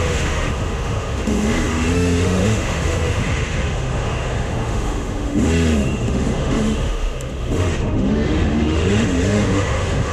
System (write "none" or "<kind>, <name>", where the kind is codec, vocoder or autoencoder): autoencoder, DAC-VAE